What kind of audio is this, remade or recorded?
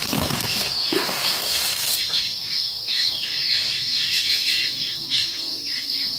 remade